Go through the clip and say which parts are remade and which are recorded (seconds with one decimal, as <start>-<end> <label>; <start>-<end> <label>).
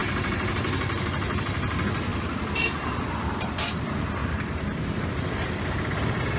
0.0-1.1 remade; 1.1-2.1 recorded; 2.1-2.8 remade; 2.8-4.2 recorded; 4.2-5.0 remade; 5.0-6.4 recorded